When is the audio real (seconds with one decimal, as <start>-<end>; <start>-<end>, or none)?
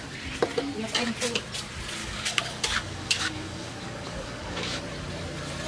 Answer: 0.0-2.0; 4.8-5.7